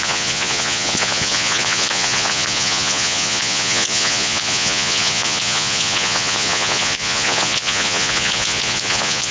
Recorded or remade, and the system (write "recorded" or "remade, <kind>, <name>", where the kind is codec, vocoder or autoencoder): remade, vocoder, Vocos